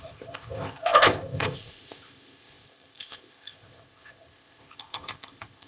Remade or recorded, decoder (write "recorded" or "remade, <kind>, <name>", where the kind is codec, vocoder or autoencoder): remade, codec, ZipCodec